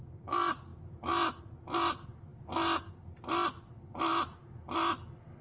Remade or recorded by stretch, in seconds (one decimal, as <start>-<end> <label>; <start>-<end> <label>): 0.0-5.4 recorded